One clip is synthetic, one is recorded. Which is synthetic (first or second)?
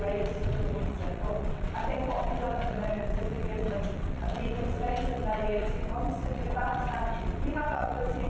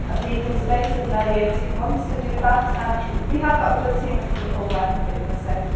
first